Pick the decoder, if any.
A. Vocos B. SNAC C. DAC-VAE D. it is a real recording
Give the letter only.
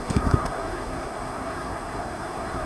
B